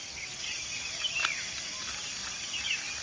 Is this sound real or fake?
real